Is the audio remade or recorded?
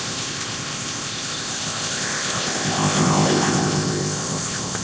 remade